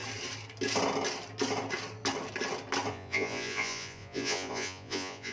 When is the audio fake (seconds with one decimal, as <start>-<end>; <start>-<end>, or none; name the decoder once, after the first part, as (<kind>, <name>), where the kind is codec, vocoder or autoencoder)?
2.9-5.3 (vocoder, Vocos)